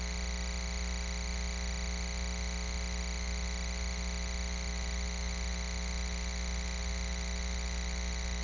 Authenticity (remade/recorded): recorded